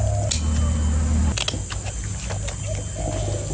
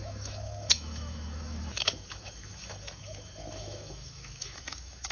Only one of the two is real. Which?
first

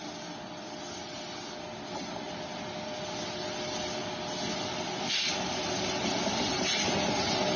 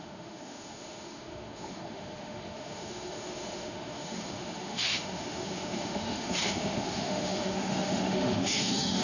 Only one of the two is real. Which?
first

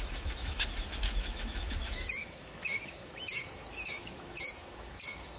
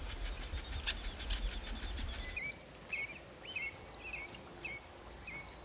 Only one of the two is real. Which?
second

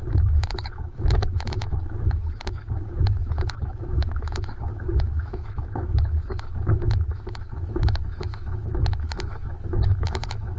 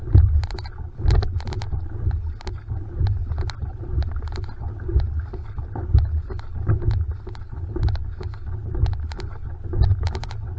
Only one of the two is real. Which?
second